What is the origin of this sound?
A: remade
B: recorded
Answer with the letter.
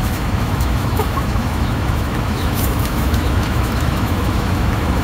A